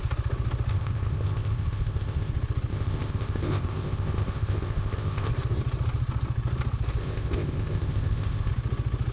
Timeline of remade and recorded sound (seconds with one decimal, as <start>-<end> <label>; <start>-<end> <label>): 0.0-0.7 recorded; 0.7-2.3 remade; 2.3-2.7 recorded; 2.7-5.3 remade; 5.3-7.0 recorded; 7.0-8.5 remade; 8.5-9.1 recorded